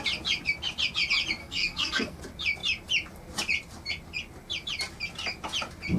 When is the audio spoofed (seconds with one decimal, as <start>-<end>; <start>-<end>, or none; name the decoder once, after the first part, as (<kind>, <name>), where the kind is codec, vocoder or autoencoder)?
1.4-2.2 (codec, SNAC)